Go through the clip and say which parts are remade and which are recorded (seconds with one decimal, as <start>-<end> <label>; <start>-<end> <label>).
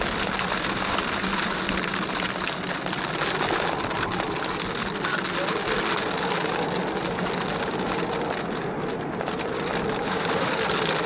0.0-10.0 recorded; 10.0-10.5 remade; 10.5-11.1 recorded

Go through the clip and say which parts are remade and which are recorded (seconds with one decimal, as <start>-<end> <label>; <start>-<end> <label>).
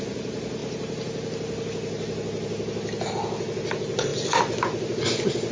0.0-5.5 recorded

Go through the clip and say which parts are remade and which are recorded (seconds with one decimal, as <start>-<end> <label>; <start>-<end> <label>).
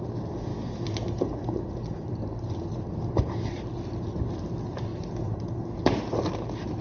0.0-6.8 recorded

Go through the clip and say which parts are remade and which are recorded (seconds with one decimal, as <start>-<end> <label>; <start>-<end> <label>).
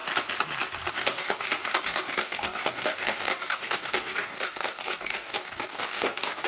0.0-0.9 recorded; 0.9-6.5 remade